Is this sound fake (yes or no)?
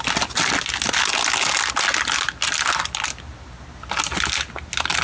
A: no